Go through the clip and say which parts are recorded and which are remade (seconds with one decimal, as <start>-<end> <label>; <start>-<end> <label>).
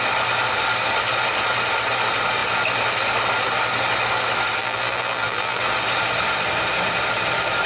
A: 0.0-4.6 recorded; 4.6-5.6 remade; 5.6-7.7 recorded